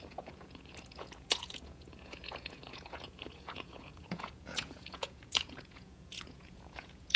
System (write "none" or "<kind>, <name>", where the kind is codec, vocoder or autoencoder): vocoder, Vocos